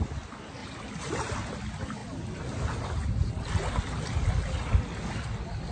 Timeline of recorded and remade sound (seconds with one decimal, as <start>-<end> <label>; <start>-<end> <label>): 0.0-0.6 recorded; 0.6-1.1 remade; 1.1-5.7 recorded

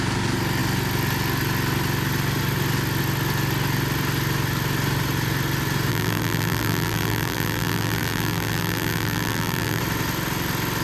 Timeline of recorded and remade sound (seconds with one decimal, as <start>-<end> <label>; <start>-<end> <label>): 0.0-5.9 recorded; 5.9-9.8 remade; 9.8-10.8 recorded

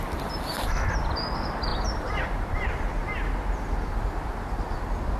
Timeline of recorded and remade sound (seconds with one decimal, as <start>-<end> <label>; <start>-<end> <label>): 0.0-1.7 recorded; 1.7-2.2 remade; 2.2-5.2 recorded

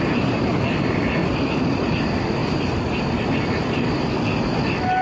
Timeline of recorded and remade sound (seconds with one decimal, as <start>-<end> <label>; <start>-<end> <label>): 0.0-1.2 recorded; 1.2-1.9 remade; 1.9-2.4 recorded; 2.4-4.1 remade; 4.1-5.0 recorded

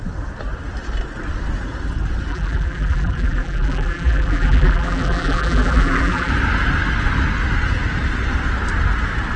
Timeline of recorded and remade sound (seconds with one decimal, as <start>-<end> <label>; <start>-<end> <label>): 0.0-2.3 recorded; 2.3-6.3 remade; 6.3-9.4 recorded

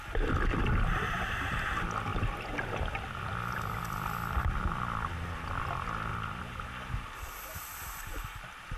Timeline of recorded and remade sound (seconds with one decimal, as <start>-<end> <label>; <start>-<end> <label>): 0.0-6.1 recorded; 6.1-6.7 remade; 6.7-8.8 recorded

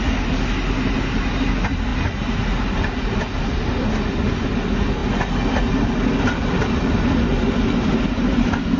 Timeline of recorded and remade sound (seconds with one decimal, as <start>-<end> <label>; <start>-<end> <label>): 0.0-8.8 recorded